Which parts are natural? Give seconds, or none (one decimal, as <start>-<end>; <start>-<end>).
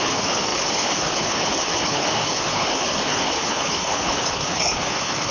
none